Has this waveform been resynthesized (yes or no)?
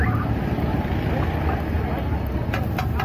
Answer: no